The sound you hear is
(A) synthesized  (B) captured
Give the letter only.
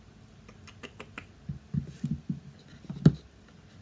B